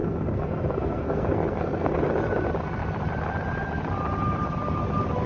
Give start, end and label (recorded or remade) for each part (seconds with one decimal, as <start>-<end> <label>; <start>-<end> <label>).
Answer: 0.0-1.9 remade; 1.9-5.3 recorded